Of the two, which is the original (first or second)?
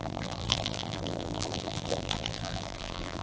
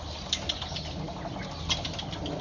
second